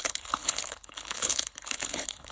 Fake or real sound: fake